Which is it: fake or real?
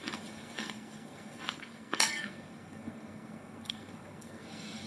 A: fake